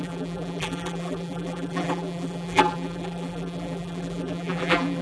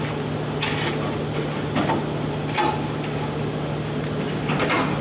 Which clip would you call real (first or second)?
second